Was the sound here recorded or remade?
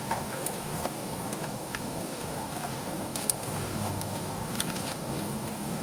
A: remade